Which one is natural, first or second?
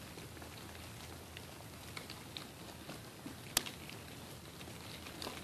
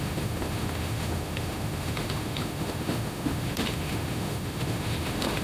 first